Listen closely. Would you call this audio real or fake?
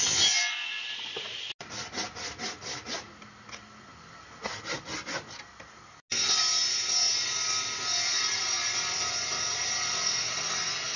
real